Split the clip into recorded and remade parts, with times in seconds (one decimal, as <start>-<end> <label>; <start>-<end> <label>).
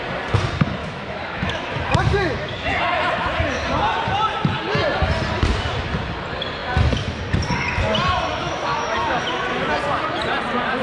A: 0.0-0.8 recorded; 0.8-2.8 remade; 2.8-8.4 recorded; 8.4-9.2 remade; 9.2-10.8 recorded